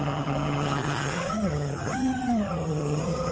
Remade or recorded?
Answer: remade